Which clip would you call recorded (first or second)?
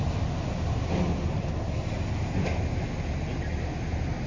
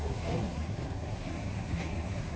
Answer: first